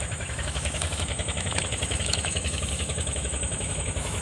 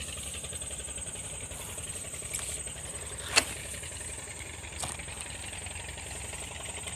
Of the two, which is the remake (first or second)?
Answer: first